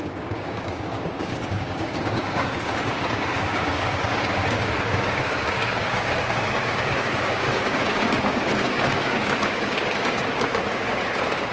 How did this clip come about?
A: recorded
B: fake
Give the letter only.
B